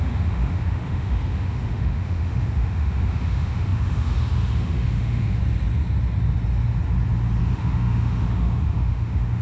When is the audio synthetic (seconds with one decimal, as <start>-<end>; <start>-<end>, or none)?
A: 0.0-5.4; 7.4-9.4